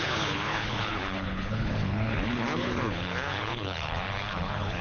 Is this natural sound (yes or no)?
no